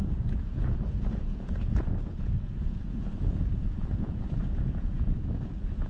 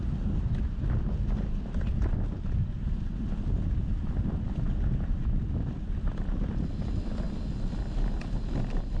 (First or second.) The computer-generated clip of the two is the first